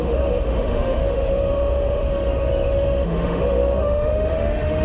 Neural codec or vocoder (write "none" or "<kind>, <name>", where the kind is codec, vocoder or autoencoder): autoencoder, DAC-VAE